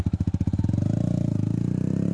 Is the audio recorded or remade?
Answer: recorded